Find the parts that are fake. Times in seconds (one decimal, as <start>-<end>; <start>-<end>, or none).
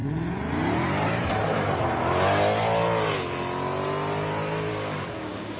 4.7-5.6